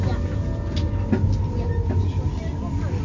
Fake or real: real